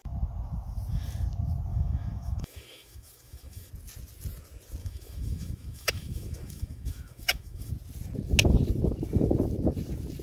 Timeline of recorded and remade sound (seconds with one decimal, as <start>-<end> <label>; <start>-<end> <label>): 0.0-1.7 recorded; 1.7-3.7 remade; 3.7-4.8 recorded; 4.8-7.7 remade; 7.7-10.2 recorded